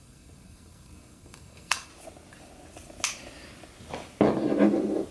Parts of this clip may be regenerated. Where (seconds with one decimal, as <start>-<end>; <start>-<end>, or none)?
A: 0.0-1.9